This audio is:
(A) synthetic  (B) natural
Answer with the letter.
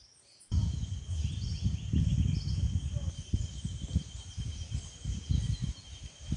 B